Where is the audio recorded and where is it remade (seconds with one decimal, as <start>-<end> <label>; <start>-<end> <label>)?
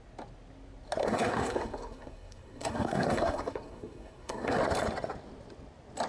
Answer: 0.0-1.0 recorded; 1.0-4.6 remade; 4.6-6.1 recorded